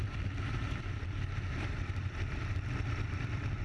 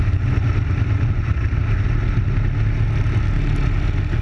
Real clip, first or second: second